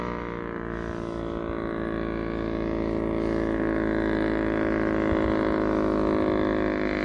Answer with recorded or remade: recorded